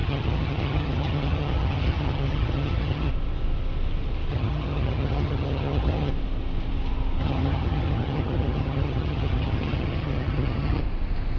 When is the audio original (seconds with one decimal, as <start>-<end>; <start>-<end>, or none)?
3.1-4.3; 6.1-7.2; 10.8-11.4